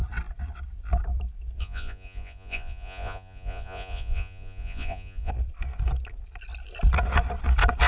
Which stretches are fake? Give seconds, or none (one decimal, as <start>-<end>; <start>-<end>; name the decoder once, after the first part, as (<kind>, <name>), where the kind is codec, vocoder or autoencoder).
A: 1.6-5.3 (vocoder, Vocos)